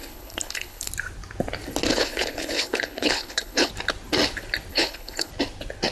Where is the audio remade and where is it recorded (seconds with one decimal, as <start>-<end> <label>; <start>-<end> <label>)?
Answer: 0.0-0.9 remade; 0.9-1.9 recorded; 1.9-3.7 remade; 3.7-4.7 recorded; 4.7-5.3 remade; 5.3-5.9 recorded